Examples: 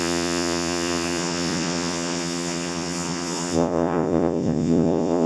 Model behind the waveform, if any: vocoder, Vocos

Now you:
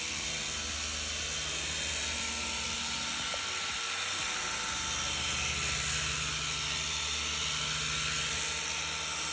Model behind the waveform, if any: none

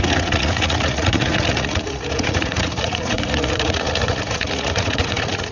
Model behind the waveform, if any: vocoder, Vocos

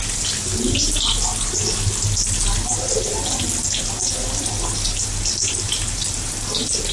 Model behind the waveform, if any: none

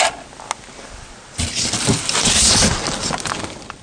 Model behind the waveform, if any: none